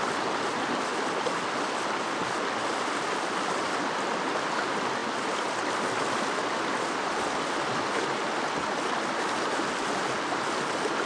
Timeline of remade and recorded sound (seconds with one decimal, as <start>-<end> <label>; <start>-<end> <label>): 0.0-11.1 recorded